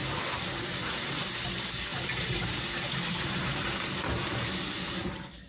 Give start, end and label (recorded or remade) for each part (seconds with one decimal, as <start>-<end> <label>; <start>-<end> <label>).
0.0-1.0 remade; 1.0-5.5 recorded